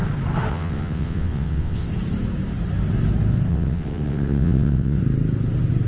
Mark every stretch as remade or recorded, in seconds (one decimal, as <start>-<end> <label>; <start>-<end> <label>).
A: 0.0-0.5 recorded; 0.5-1.9 remade; 1.9-3.5 recorded; 3.5-5.0 remade; 5.0-5.9 recorded